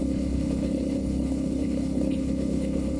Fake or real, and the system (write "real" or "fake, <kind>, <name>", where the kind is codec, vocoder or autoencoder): fake, codec, HILCodec